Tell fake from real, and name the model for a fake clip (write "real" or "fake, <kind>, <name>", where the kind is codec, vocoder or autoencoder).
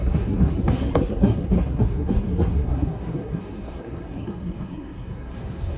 fake, codec, SNAC